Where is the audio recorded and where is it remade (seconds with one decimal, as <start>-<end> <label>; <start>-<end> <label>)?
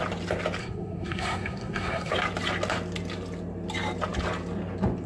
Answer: 0.0-0.6 recorded; 0.6-2.1 remade; 2.1-5.1 recorded